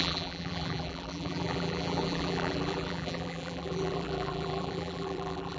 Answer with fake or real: fake